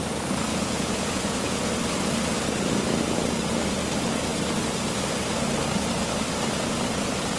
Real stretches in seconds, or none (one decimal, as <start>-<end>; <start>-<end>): 0.0-0.5; 1.7-7.4